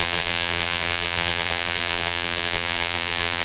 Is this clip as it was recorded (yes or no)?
no